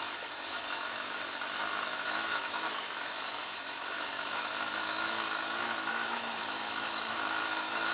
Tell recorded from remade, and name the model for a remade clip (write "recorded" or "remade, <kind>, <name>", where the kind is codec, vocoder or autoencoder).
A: remade, autoencoder, DAC-VAE